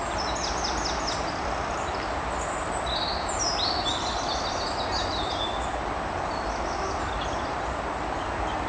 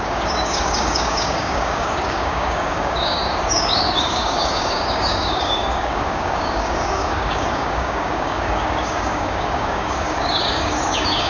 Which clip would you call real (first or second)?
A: first